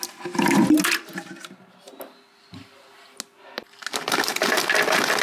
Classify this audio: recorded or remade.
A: recorded